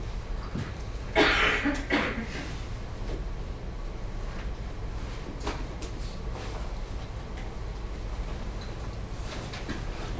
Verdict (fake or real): real